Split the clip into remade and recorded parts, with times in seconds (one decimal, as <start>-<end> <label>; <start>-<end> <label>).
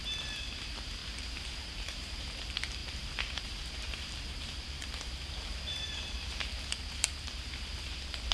0.0-1.0 recorded; 1.0-2.4 remade; 2.4-2.8 recorded; 2.8-7.4 remade; 7.4-8.3 recorded